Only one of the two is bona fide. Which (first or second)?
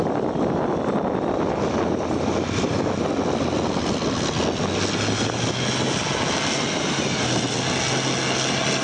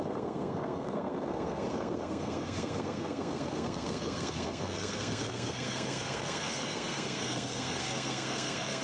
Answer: first